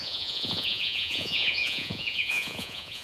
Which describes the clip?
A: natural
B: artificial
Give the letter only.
B